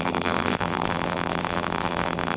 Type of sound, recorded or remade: remade